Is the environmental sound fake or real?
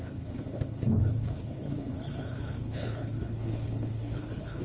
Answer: fake